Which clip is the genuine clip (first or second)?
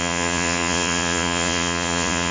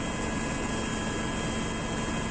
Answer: second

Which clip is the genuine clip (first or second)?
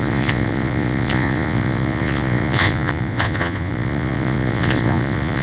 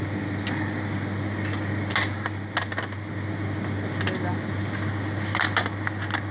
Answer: second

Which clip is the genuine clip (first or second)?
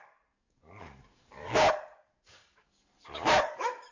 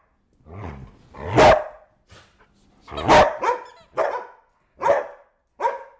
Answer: second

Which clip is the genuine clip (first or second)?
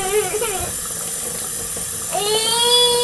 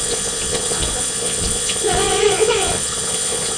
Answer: first